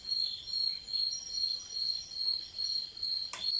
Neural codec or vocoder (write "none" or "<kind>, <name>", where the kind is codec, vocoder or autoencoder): none